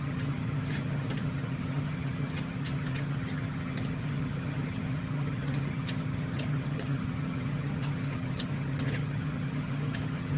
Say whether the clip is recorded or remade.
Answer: remade